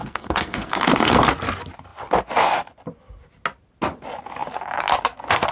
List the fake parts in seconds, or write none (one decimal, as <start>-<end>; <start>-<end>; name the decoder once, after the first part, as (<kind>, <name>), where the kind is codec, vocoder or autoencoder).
0.0-1.3 (codec, SNAC)

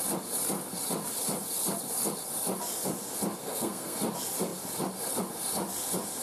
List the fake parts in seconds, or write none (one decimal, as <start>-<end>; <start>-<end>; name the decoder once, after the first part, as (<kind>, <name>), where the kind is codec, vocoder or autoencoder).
3.4-4.0 (codec, SNAC)

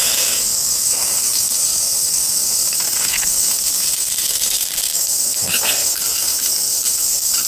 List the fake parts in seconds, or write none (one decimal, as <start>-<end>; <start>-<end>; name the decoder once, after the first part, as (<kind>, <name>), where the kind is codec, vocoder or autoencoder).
0.0-7.5 (codec, SNAC)

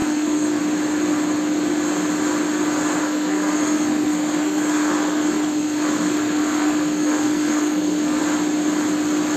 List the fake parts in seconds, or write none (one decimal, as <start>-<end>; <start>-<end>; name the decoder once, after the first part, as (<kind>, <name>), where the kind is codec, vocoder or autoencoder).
0.0-0.6 (codec, SNAC); 3.0-8.2

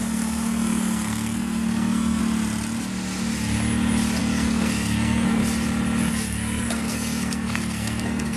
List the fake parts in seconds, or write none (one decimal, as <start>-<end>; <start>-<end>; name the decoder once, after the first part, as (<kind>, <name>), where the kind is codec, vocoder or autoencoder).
0.0-2.2 (codec, SNAC); 4.2-5.4; 6.0-8.4

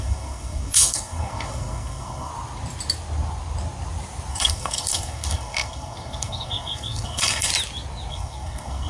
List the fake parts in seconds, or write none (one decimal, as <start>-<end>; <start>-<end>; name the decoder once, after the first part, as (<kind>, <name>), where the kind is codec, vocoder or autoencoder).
0.0-2.3 (codec, SNAC); 4.3-7.5; 8.1-8.9

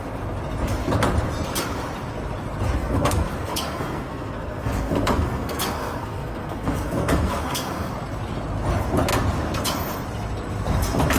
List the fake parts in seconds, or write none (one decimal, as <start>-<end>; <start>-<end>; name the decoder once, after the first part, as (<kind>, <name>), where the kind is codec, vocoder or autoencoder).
2.8-7.9 (codec, SNAC)